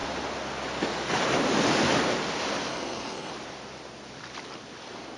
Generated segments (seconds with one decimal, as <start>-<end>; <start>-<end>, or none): 2.7-3.3